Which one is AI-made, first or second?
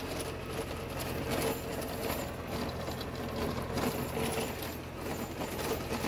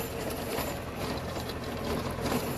second